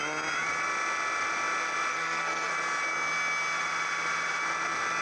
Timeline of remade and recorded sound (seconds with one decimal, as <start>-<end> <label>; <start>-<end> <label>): 0.0-1.9 recorded; 1.9-2.5 remade; 2.5-5.0 recorded